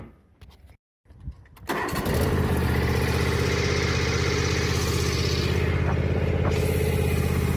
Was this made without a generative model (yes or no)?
yes